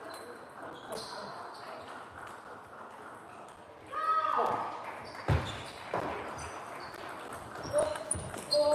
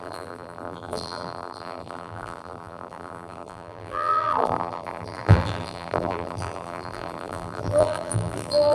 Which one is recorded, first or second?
first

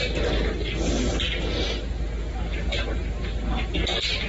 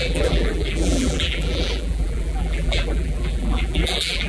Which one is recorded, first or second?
first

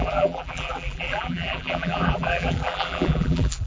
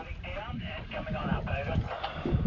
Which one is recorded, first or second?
second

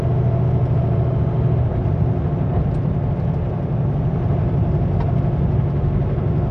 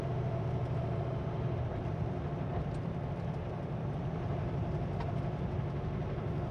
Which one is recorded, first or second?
first